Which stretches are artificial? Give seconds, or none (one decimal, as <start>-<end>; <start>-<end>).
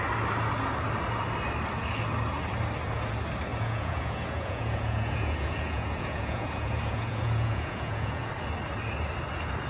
3.5-8.3